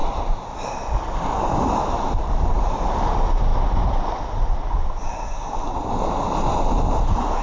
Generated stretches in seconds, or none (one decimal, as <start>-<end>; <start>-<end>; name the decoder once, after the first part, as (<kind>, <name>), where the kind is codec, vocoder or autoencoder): none